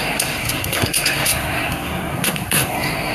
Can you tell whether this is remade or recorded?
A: remade